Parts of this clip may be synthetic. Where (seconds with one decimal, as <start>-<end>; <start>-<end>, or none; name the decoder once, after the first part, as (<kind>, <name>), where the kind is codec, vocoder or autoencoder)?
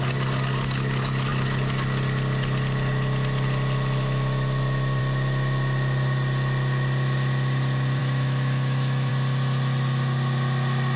8.0-9.1 (autoencoder, DAC-VAE)